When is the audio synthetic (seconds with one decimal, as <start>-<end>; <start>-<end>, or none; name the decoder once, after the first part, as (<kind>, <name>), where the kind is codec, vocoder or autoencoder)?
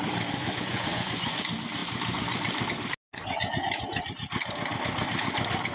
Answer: 0.4-1.4 (vocoder, Vocos)